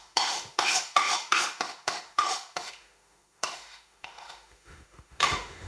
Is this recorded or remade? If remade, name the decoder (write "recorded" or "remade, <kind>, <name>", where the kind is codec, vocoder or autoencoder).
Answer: remade, autoencoder, DAC-VAE